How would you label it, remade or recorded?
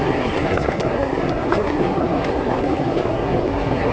remade